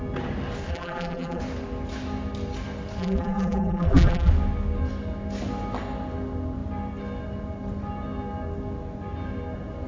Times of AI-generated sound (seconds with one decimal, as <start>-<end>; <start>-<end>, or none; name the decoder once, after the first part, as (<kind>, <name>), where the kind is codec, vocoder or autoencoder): 0.7-1.4 (vocoder, BigVGAN v2); 3.0-4.3